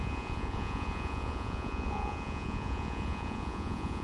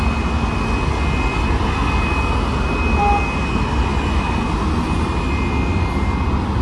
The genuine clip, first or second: second